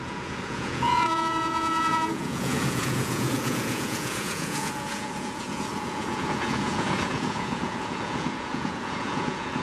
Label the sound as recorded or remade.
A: remade